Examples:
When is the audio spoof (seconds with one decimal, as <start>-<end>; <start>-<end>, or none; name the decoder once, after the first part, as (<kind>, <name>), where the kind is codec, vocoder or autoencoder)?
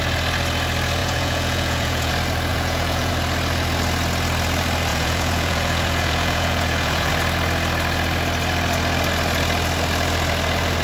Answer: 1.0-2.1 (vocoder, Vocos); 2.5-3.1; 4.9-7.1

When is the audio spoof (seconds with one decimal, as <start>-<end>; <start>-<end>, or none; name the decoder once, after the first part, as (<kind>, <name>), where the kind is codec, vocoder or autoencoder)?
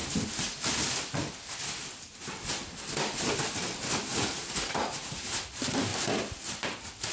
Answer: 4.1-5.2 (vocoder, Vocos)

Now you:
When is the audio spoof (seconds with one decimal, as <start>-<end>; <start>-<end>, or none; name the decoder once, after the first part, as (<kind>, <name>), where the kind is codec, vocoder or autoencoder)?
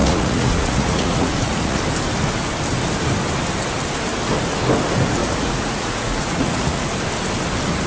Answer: 0.0-1.8 (vocoder, Vocos); 5.2-6.9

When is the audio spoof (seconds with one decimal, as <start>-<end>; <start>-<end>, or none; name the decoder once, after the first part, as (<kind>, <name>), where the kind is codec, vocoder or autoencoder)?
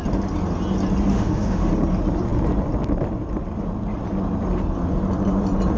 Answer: 1.1-1.7 (autoencoder, DAC-VAE)